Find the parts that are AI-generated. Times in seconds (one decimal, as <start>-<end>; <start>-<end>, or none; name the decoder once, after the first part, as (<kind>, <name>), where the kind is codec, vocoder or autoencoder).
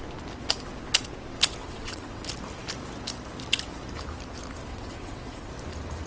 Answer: 1.6-2.2 (vocoder, WaveNeXt); 4.7-5.5